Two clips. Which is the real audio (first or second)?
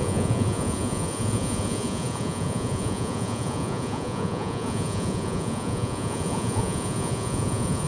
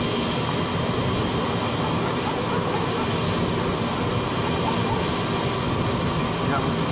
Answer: second